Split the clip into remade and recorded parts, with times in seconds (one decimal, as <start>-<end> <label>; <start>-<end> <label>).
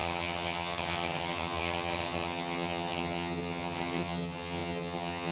0.0-5.3 remade